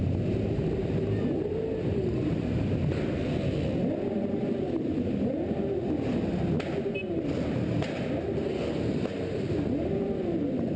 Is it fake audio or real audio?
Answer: real